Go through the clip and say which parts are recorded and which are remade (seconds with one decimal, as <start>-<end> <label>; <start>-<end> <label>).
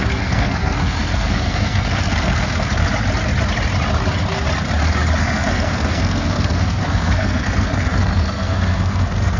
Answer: 0.0-2.8 remade; 2.8-5.2 recorded; 5.2-9.4 remade